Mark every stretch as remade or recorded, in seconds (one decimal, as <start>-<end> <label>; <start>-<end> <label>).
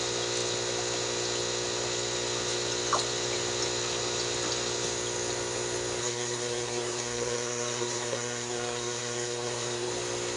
0.0-6.0 recorded; 6.0-9.9 remade; 9.9-10.4 recorded